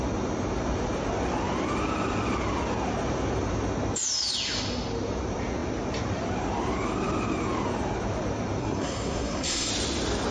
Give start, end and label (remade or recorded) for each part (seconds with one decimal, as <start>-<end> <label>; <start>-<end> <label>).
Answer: 0.0-8.6 recorded; 8.6-9.7 remade; 9.7-10.3 recorded